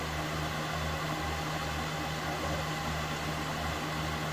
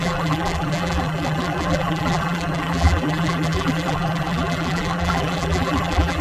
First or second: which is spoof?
second